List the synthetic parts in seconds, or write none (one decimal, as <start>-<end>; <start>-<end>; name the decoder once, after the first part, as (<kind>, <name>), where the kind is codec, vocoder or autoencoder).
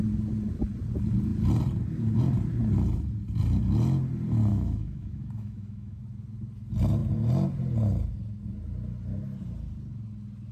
4.5-6.0 (autoencoder, DAC-VAE)